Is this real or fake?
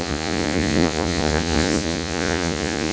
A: fake